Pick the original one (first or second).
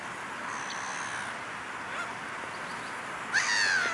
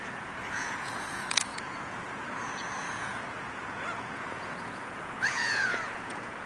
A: first